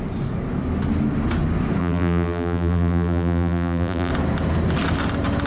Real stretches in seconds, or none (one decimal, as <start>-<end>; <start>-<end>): 0.0-1.8; 4.1-5.5